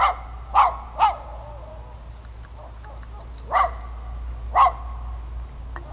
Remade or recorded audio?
recorded